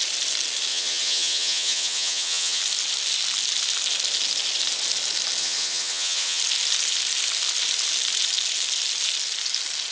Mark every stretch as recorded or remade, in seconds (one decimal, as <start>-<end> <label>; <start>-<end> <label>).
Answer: 0.0-0.7 recorded; 0.7-2.6 remade; 2.6-5.4 recorded; 5.4-6.4 remade; 6.4-9.9 recorded